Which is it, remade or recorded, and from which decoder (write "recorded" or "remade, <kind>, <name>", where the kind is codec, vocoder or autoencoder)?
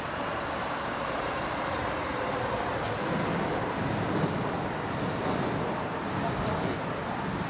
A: recorded